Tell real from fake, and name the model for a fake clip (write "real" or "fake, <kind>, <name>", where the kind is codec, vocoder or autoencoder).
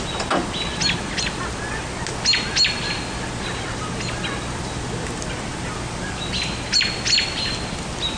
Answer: real